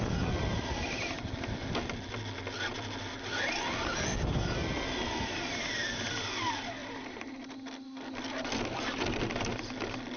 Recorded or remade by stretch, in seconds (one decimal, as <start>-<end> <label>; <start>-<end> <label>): 0.0-6.8 recorded; 6.8-7.3 remade; 7.3-10.2 recorded